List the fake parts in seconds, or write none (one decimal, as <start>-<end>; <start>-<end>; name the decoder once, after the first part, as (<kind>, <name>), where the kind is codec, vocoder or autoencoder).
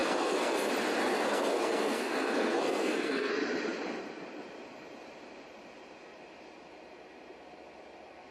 0.0-0.7 (codec, SNAC); 1.1-3.3